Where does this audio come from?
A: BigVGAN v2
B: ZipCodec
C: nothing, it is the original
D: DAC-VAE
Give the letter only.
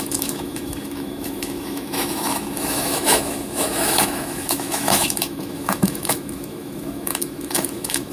D